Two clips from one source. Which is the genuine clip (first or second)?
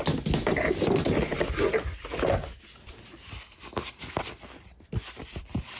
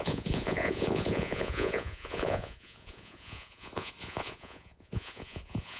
first